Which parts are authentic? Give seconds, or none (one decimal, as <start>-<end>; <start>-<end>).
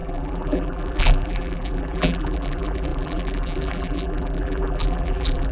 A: none